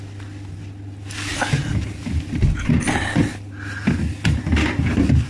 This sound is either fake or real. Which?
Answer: real